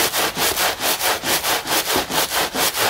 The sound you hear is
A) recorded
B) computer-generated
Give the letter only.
A